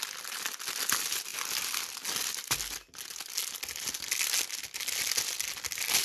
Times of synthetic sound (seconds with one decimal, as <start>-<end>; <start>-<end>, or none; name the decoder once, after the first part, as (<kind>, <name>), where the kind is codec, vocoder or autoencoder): none